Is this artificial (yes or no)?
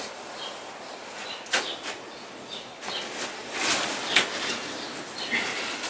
no